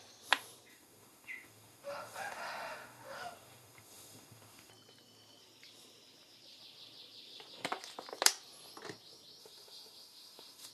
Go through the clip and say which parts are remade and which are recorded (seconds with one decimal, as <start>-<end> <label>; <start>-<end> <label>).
0.0-0.7 recorded; 0.7-4.7 remade; 4.7-9.4 recorded; 9.4-10.7 remade